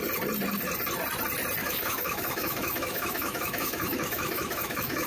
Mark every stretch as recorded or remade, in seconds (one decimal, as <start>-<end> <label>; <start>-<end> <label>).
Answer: 0.0-1.6 recorded; 1.6-5.1 remade